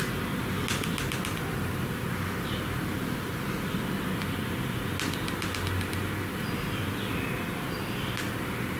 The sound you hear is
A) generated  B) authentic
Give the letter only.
B